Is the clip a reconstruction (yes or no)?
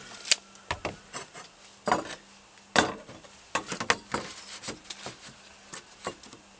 no